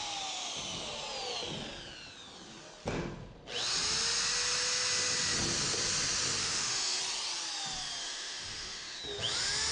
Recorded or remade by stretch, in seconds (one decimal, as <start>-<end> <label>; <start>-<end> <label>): 0.0-6.4 recorded; 6.4-7.0 remade; 7.0-8.0 recorded; 8.0-9.0 remade; 9.0-9.7 recorded